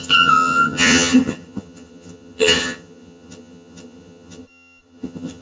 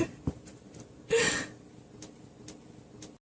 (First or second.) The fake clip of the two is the first